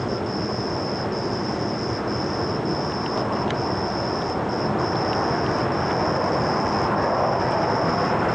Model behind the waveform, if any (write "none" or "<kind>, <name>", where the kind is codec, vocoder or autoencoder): none